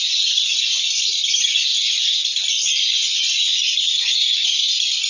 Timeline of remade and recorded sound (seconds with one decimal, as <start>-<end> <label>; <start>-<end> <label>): 0.0-1.7 recorded; 1.7-2.5 remade; 2.5-5.1 recorded